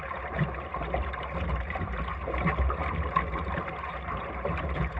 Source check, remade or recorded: remade